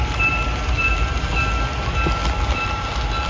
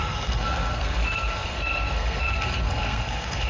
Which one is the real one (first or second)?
first